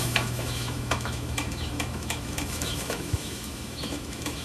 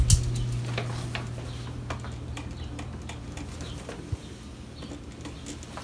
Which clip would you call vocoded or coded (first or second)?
first